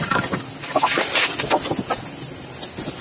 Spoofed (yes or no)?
no